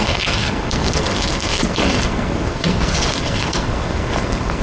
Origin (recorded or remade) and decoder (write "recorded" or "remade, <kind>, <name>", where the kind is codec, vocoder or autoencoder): remade, codec, SNAC